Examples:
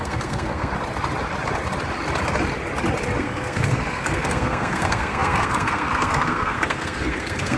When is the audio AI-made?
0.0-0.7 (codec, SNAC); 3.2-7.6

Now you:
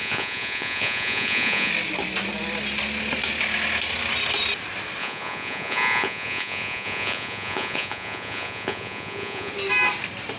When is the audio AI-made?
0.0-1.7 (vocoder, Vocos); 5.0-9.5

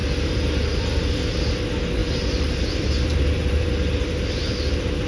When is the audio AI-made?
2.0-2.7 (vocoder, BigVGAN v2); 3.1-3.7

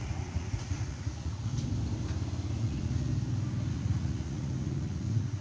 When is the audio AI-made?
0.0-1.5 (vocoder, Vocos); 2.6-3.1; 3.7-5.4

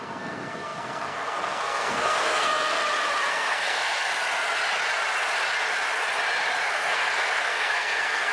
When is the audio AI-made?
0.0-2.8 (codec, SNAC); 3.3-4.1; 6.7-8.3

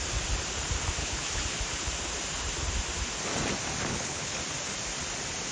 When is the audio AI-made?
1.0-1.6 (codec, HILCodec); 3.9-4.4

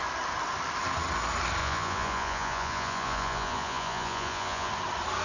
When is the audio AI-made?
1.6-4.7 (vocoder, Vocos)

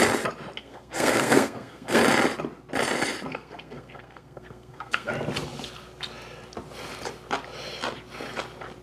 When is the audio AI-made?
0.6-2.0 (codec, SNAC); 3.3-5.1